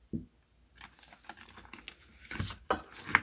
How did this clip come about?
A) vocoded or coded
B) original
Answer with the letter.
B